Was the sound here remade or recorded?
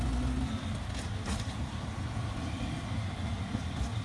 recorded